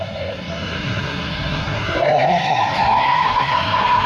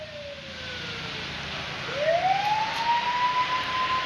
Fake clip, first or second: first